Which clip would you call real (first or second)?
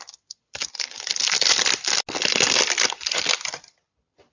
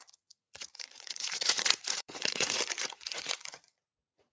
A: first